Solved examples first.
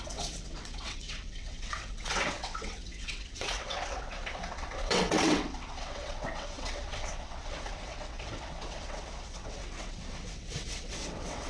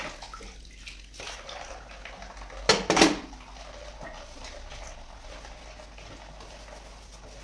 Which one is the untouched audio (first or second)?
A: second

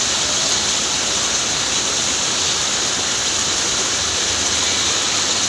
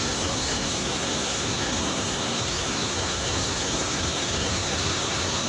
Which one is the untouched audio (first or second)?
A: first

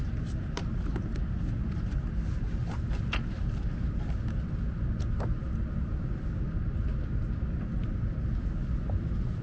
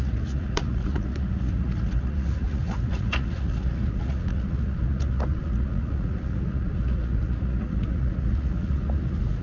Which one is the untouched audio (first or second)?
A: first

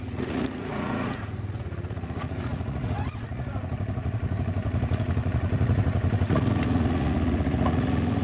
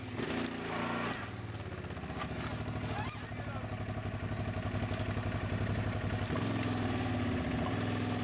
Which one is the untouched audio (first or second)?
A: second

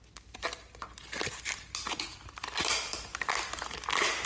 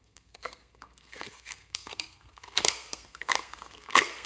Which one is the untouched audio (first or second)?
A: first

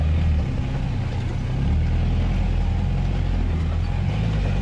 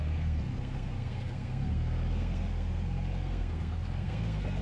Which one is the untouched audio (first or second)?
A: first